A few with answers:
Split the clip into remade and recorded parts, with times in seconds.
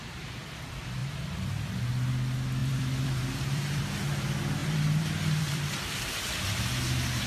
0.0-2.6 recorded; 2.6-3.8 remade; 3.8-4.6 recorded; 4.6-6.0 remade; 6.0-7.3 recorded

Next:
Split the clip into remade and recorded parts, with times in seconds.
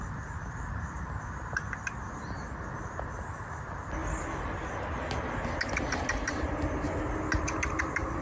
0.0-8.2 recorded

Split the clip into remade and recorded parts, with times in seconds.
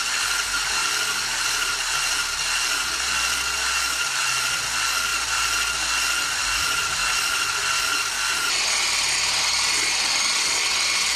0.0-0.8 recorded; 0.8-1.7 remade; 1.7-5.1 recorded; 5.1-6.0 remade; 6.0-11.2 recorded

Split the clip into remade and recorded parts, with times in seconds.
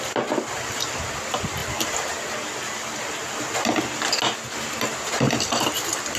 0.0-6.2 recorded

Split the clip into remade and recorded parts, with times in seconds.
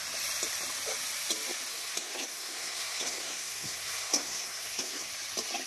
0.0-1.7 recorded; 1.7-5.1 remade; 5.1-5.7 recorded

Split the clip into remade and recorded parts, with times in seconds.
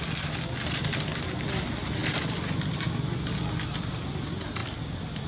0.0-5.3 recorded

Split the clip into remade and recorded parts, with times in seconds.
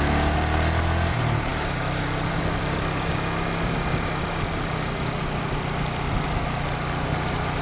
0.0-7.6 recorded